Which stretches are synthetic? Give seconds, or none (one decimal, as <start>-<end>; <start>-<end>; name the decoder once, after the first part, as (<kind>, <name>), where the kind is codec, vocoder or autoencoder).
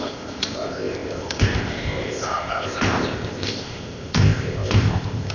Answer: 0.0-5.3 (codec, ZipCodec)